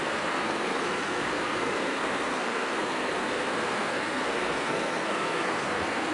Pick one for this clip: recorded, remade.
remade